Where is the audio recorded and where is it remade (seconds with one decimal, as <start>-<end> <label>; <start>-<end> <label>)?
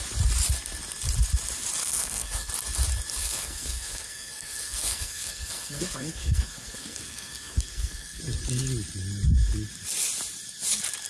0.0-1.8 recorded; 1.8-2.5 remade; 2.5-3.2 recorded; 3.2-8.2 remade; 8.2-11.1 recorded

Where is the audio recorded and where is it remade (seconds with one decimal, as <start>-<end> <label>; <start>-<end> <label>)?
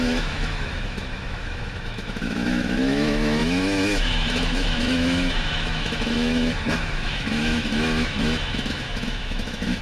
0.0-9.8 remade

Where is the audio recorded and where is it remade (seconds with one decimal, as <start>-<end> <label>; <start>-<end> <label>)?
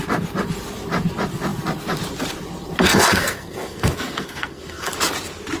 0.0-2.8 recorded; 2.8-4.9 remade; 4.9-5.6 recorded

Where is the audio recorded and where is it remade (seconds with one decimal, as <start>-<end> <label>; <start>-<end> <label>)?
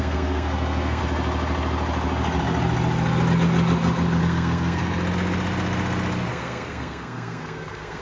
0.0-1.0 remade; 1.0-4.2 recorded; 4.2-4.8 remade; 4.8-6.3 recorded; 6.3-8.0 remade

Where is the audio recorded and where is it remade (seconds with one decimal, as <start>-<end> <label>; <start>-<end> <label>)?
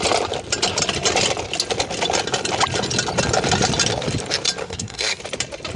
0.0-4.6 recorded; 4.6-5.2 remade; 5.2-5.8 recorded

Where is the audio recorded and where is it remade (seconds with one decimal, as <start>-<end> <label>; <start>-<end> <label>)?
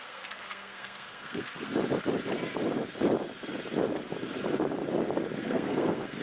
0.0-1.7 remade; 1.7-5.4 recorded; 5.4-6.2 remade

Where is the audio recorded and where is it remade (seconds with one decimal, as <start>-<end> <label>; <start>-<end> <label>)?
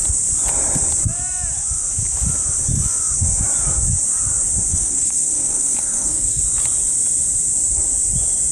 0.0-4.7 recorded; 4.7-6.4 remade; 6.4-8.5 recorded